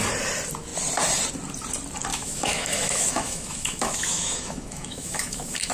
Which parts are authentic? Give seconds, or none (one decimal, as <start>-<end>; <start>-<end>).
0.0-2.1